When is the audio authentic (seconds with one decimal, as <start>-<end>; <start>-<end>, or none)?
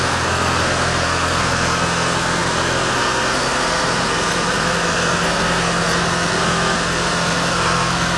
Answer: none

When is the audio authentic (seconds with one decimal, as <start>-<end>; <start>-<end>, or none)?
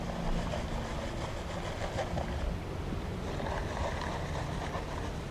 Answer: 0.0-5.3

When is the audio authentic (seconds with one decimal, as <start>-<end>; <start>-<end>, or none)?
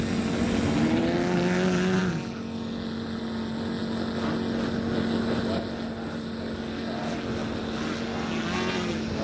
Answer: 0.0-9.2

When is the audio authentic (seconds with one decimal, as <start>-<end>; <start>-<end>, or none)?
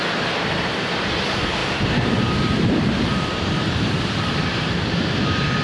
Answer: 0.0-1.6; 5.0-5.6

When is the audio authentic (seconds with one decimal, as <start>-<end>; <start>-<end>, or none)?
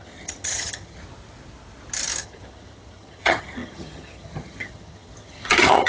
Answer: 1.0-2.2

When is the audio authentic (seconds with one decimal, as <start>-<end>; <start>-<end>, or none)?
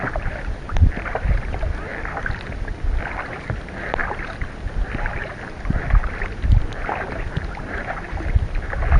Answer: 0.0-9.0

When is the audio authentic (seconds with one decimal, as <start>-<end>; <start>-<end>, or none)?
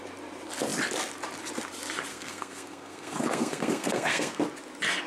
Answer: 0.0-2.1; 4.4-5.1